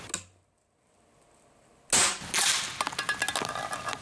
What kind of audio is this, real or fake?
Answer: real